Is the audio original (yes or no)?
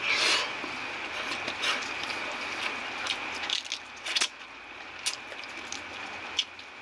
yes